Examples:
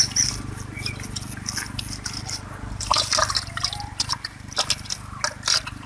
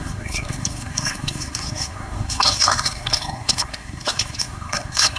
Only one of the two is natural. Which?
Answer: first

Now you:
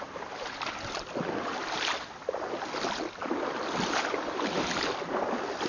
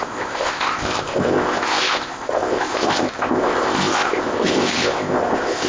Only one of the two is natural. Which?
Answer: first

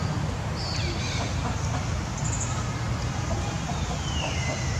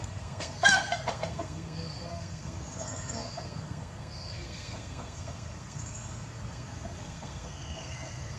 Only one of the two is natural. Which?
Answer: first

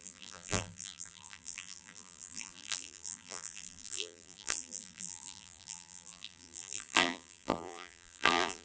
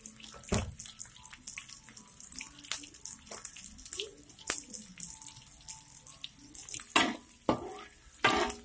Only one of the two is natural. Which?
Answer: second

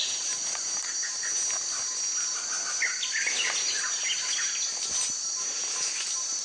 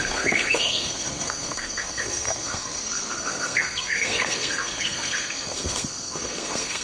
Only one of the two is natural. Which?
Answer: first